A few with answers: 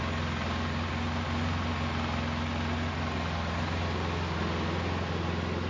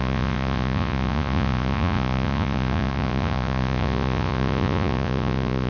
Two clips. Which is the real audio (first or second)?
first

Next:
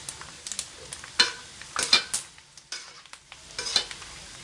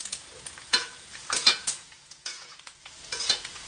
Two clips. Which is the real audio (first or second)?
first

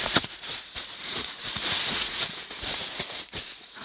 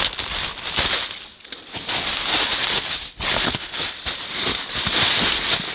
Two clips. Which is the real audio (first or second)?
second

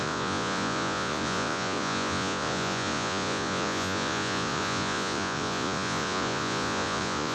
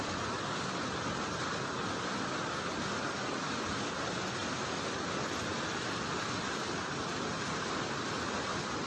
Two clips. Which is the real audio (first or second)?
second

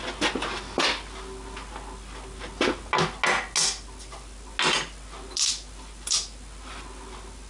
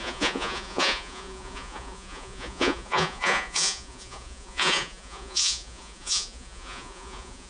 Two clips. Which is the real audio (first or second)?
first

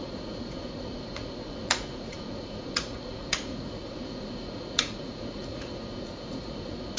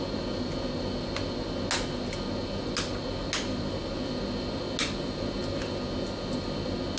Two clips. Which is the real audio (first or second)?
second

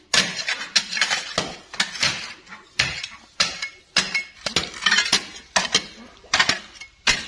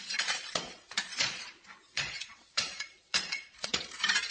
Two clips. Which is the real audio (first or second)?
first